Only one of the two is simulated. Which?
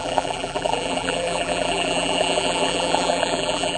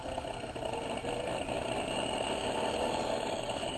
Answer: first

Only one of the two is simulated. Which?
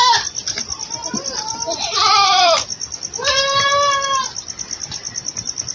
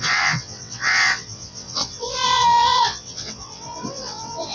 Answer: second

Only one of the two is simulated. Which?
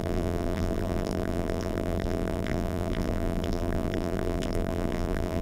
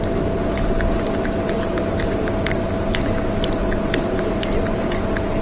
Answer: first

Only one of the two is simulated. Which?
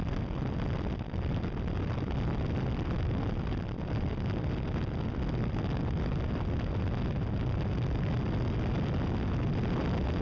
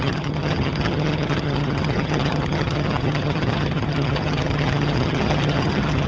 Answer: second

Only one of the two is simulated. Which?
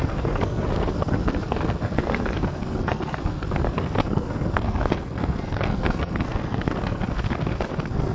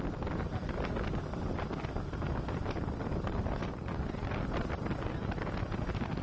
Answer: first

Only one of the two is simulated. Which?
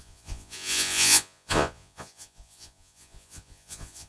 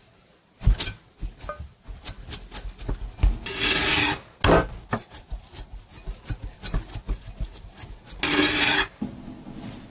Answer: first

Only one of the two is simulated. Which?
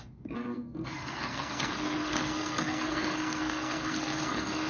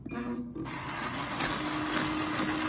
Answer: first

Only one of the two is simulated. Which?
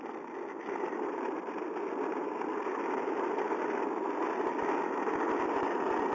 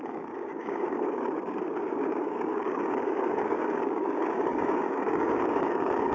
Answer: second